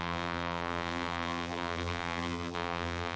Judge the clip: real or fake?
fake